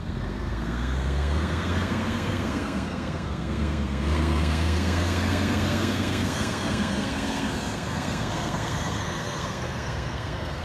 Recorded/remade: remade